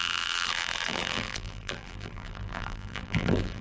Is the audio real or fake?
fake